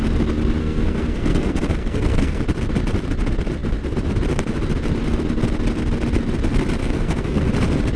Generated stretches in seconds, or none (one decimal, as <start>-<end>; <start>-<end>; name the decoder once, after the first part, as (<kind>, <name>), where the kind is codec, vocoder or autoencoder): 0.6-2.4 (codec, SNAC); 6.8-7.5